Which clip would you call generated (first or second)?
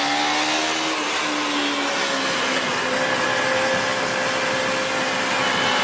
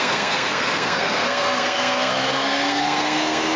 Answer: second